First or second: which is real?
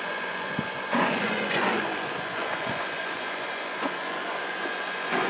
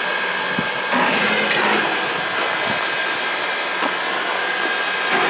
second